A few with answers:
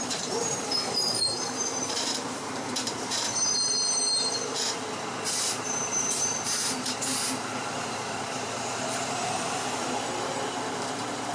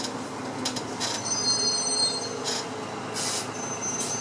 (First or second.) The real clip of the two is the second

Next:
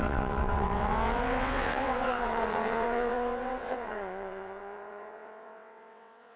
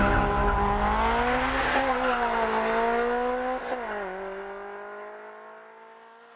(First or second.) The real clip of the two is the second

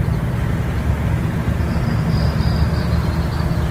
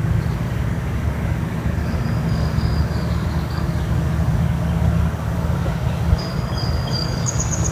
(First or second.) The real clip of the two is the first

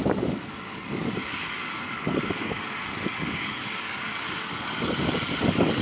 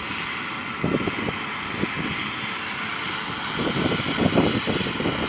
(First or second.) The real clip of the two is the second